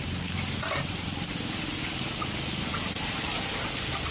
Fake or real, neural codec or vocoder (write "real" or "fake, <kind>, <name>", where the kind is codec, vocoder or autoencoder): real